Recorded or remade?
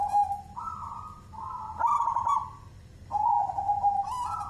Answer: recorded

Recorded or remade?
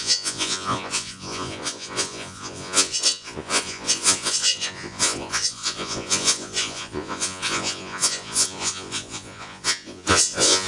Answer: remade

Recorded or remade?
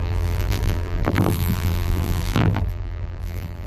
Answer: remade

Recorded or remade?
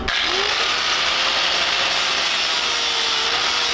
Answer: recorded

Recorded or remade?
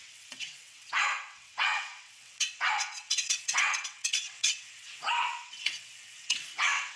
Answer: remade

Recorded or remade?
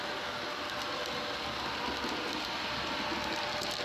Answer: recorded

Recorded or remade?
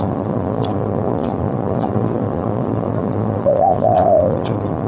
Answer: remade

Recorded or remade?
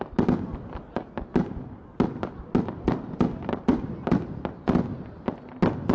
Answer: recorded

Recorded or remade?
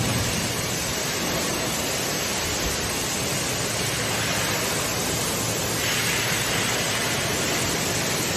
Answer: recorded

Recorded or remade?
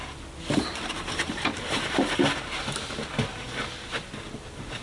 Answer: remade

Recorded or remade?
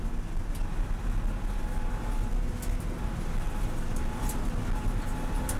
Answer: recorded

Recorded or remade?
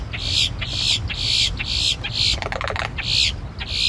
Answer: recorded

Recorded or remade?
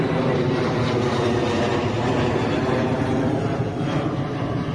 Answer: recorded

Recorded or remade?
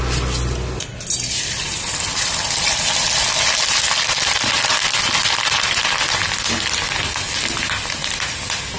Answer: recorded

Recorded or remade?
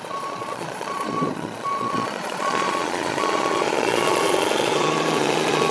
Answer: remade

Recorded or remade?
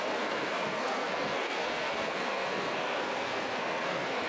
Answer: remade